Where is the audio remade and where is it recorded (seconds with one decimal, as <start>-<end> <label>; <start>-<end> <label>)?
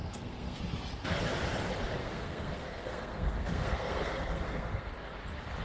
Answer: 0.0-0.6 remade; 0.6-2.0 recorded; 2.0-4.9 remade; 4.9-5.6 recorded